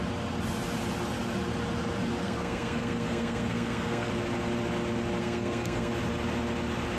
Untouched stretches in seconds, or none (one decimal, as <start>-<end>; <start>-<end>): 0.0-2.2; 4.1-5.2; 5.9-7.0